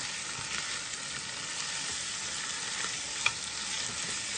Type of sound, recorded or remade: recorded